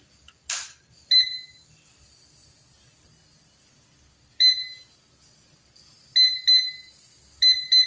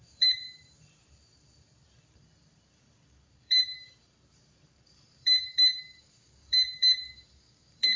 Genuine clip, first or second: first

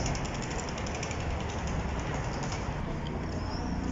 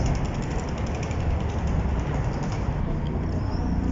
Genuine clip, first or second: first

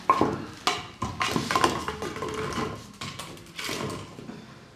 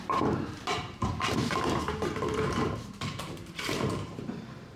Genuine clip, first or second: first